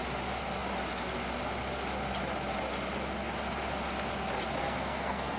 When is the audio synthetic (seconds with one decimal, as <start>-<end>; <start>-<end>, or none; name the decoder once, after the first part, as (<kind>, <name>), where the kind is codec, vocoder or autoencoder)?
4.6-5.4 (codec, SNAC)